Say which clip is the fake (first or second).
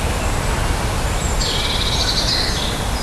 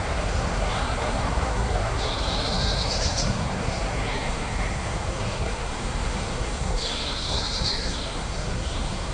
second